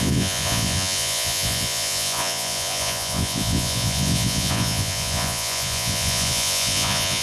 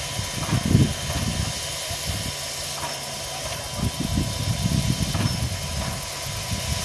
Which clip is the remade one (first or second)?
first